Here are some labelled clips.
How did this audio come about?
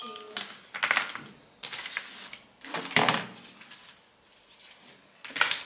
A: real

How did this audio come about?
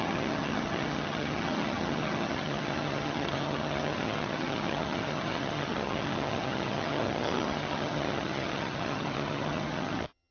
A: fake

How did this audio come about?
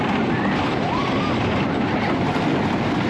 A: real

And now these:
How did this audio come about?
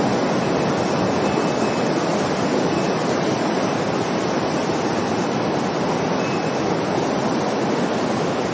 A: real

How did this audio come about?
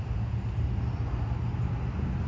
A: real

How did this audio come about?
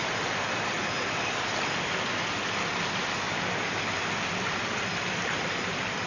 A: fake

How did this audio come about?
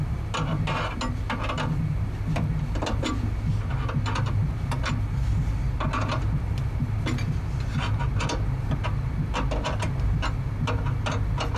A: real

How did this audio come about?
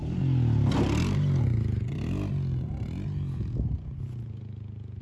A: real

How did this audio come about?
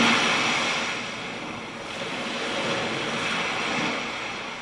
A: real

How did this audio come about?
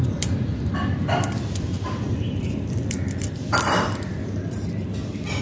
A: fake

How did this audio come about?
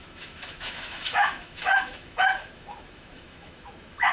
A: fake